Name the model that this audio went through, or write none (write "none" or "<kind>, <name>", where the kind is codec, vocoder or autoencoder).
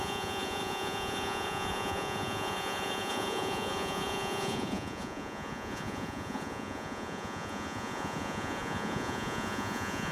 vocoder, Vocos